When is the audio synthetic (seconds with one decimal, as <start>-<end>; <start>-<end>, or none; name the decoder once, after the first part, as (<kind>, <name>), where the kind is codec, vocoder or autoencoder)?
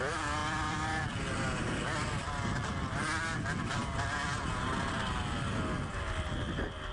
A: none